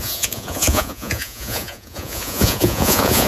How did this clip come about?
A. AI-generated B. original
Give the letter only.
A